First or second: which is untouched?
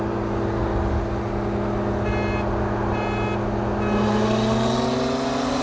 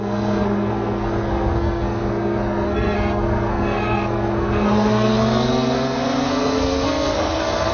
first